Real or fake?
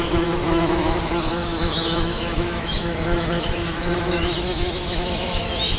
fake